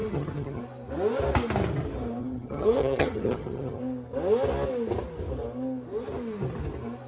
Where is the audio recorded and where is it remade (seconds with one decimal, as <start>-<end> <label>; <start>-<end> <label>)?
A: 0.0-0.6 remade; 0.6-2.2 recorded; 2.2-3.8 remade; 3.8-7.1 recorded